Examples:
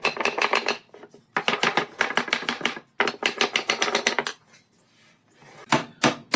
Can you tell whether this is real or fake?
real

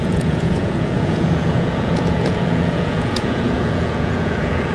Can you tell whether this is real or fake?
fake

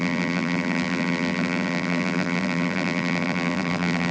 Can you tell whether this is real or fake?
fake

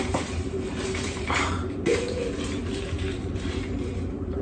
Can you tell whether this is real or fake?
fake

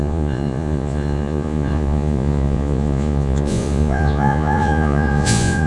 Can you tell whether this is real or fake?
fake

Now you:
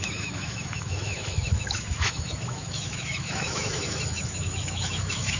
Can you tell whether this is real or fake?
fake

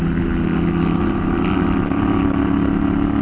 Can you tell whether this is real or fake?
real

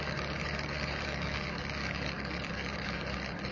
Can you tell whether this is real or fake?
fake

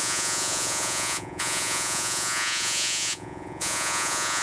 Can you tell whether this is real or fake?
fake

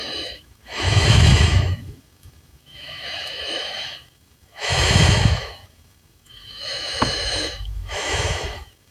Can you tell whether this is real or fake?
fake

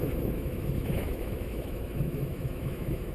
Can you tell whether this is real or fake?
fake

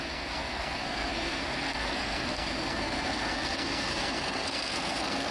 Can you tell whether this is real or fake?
fake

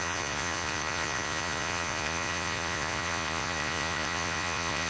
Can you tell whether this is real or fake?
fake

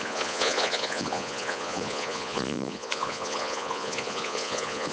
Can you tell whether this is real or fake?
fake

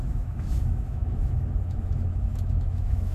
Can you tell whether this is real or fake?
fake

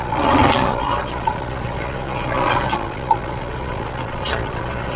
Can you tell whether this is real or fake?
fake